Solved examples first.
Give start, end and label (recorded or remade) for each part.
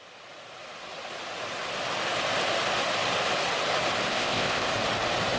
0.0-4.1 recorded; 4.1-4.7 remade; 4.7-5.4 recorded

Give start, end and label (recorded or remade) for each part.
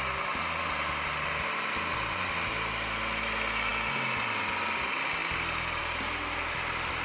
0.0-7.0 recorded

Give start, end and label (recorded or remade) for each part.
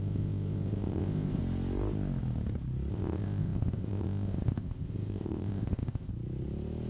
0.0-1.4 remade; 1.4-2.9 recorded; 2.9-6.1 remade; 6.1-6.9 recorded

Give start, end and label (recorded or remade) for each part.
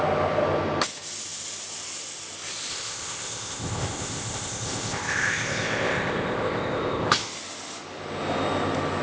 0.0-2.7 recorded; 2.7-7.3 remade; 7.3-9.0 recorded